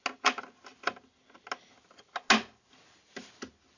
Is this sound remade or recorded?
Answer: recorded